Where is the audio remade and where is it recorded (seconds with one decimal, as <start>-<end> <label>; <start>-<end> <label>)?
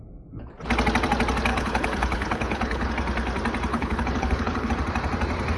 0.0-1.5 recorded; 1.5-2.9 remade; 2.9-3.7 recorded; 3.7-4.7 remade; 4.7-5.6 recorded